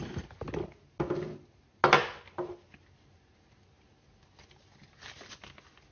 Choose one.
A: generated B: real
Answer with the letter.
B